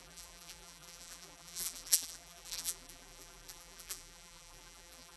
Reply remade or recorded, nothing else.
remade